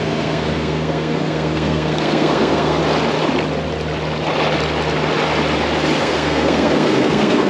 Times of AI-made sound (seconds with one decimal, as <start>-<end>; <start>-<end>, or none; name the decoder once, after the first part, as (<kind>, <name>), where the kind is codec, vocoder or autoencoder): 0.0-2.8 (codec, SNAC); 6.0-7.5